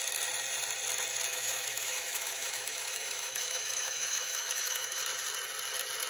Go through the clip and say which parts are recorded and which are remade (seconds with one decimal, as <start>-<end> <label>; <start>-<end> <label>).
0.0-1.3 recorded; 1.3-5.0 remade; 5.0-6.1 recorded